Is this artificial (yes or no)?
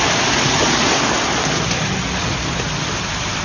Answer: no